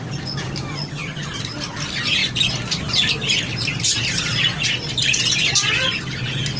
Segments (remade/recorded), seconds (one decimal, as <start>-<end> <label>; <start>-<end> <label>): 0.0-0.7 recorded; 0.7-1.3 remade; 1.3-6.6 recorded

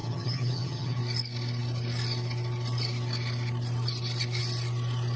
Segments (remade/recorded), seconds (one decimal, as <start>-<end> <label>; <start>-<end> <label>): 0.0-1.0 remade; 1.0-5.2 recorded